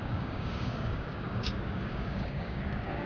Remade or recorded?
remade